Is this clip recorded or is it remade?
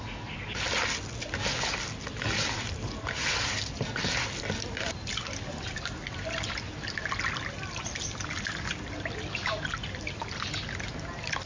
recorded